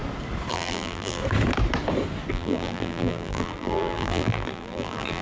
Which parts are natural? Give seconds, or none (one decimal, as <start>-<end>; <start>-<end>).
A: 0.0-0.5; 1.2-2.3

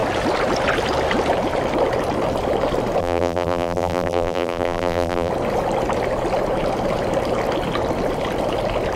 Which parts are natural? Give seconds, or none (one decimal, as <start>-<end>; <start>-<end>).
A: 0.0-3.0; 5.3-9.0